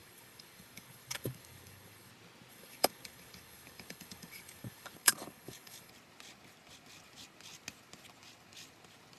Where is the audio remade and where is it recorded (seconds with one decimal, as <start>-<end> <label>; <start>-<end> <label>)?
0.0-2.1 remade; 2.1-2.5 recorded; 2.5-5.9 remade; 5.9-9.2 recorded